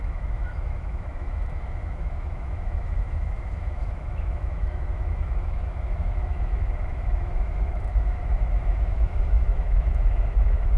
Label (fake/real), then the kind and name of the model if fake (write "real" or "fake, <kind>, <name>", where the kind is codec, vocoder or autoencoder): fake, autoencoder, DAC-VAE